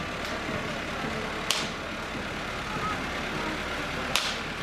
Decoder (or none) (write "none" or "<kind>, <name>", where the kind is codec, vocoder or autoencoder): none